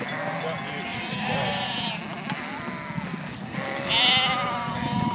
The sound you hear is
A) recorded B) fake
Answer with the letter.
A